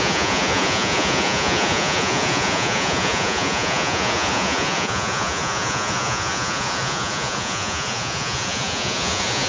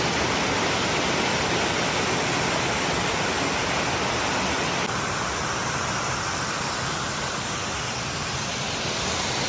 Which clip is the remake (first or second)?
first